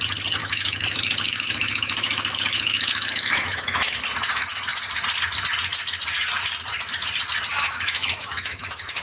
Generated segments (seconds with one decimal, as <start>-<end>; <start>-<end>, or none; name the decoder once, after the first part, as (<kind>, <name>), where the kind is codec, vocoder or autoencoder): 0.4-4.0 (autoencoder, DAC-VAE); 7.5-9.0